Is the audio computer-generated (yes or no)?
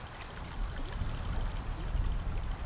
no